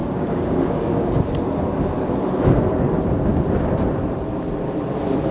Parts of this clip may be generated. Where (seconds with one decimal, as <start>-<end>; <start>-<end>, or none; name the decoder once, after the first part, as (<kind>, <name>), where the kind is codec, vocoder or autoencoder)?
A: 0.0-1.3 (codec, DAC)